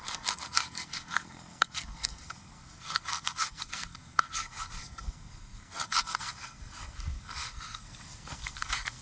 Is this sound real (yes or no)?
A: no